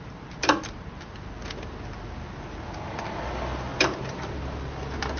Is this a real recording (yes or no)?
yes